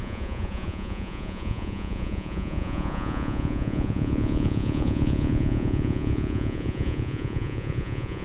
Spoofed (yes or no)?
yes